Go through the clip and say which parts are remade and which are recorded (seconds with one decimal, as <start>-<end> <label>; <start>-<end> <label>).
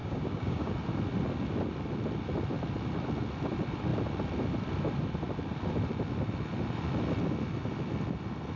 0.0-0.7 remade; 0.7-8.6 recorded